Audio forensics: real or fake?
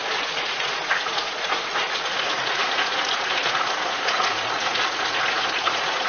fake